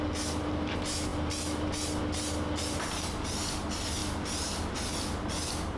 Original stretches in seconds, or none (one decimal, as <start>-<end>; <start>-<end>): 0.0-5.8